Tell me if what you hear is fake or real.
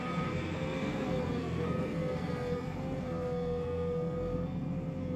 fake